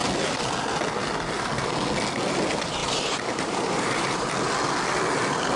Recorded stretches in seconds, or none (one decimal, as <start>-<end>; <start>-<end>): 0.0-2.8; 4.3-5.6